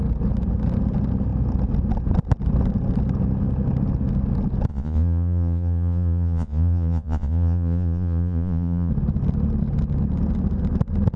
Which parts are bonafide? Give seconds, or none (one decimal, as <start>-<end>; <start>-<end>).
0.0-4.7; 8.9-11.2